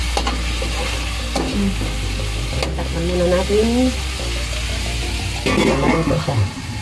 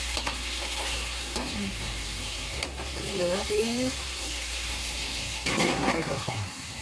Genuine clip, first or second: first